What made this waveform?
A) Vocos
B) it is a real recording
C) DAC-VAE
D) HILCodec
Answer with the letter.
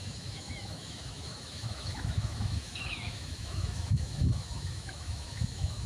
C